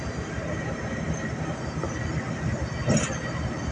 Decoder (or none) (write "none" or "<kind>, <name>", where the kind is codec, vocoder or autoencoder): none